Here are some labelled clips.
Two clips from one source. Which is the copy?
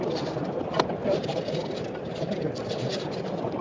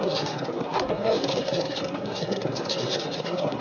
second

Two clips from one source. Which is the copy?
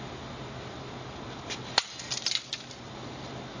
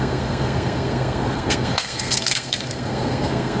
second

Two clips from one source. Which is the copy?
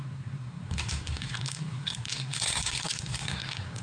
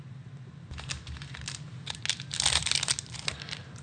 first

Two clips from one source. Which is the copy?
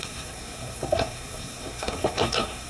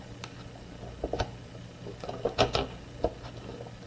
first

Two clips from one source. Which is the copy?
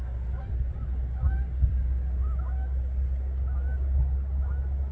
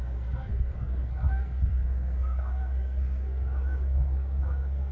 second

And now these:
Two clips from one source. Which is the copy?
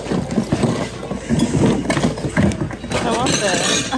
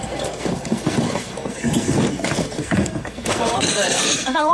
second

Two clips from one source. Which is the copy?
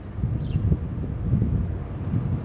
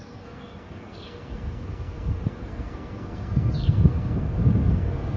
second